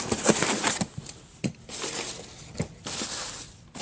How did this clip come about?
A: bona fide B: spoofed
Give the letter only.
A